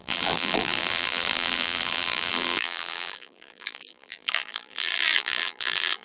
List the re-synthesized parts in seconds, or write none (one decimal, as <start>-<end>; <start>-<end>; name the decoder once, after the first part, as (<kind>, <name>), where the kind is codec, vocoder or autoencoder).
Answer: 0.0-6.0 (vocoder, BigVGAN v2)